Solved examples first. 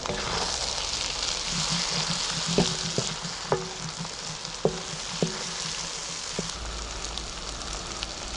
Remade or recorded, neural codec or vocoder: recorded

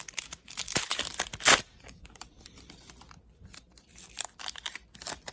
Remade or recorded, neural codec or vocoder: remade, vocoder, BigVGAN v2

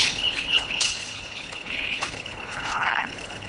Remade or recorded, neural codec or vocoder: remade, codec, HILCodec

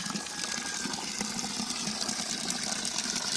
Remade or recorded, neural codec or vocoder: recorded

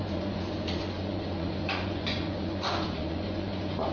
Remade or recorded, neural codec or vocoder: remade, vocoder, Vocos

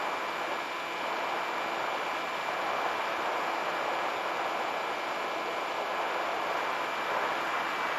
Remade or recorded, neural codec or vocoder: recorded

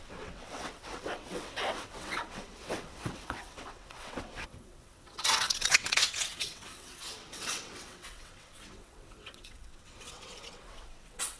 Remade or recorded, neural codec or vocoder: remade, vocoder, WaveNeXt